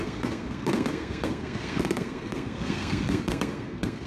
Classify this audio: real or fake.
fake